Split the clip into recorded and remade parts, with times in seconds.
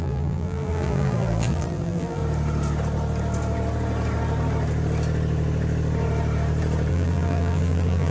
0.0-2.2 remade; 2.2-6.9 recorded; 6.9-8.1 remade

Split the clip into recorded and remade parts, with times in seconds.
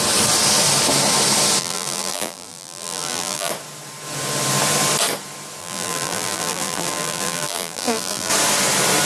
0.0-1.6 recorded; 1.6-3.5 remade; 3.5-5.6 recorded; 5.6-8.3 remade; 8.3-9.1 recorded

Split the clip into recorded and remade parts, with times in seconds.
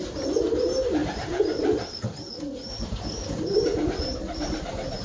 0.0-1.0 recorded; 1.0-4.0 remade; 4.0-5.0 recorded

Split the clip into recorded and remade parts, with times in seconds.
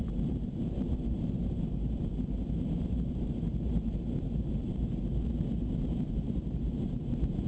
0.0-7.5 remade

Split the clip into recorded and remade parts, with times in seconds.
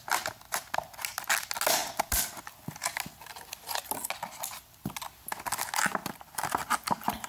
0.0-1.8 recorded; 1.8-2.3 remade; 2.3-7.3 recorded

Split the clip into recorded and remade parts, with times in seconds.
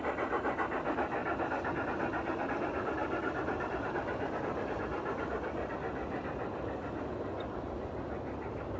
0.0-3.0 recorded; 3.0-5.7 remade; 5.7-8.8 recorded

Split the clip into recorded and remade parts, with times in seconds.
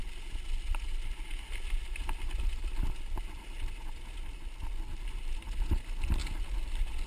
0.0-7.1 recorded